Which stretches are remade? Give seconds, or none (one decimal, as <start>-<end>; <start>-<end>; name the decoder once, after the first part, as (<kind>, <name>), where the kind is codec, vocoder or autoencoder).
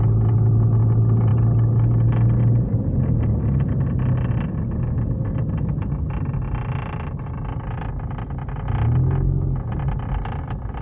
none